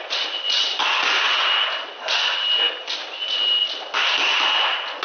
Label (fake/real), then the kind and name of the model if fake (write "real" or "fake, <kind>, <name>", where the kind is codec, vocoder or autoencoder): real